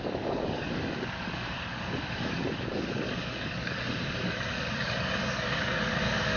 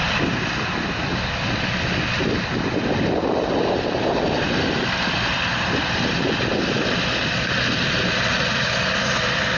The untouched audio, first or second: second